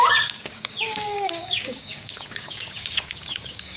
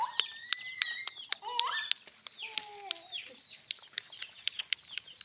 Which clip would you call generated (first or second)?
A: first